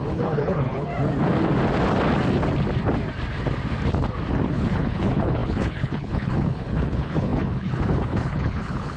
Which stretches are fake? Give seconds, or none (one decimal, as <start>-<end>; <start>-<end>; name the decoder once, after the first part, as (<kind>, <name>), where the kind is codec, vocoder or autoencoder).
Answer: 0.0-0.9 (codec, HILCodec); 4.5-9.0